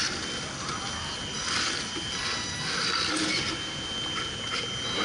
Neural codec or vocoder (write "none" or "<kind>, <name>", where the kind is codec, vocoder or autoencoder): none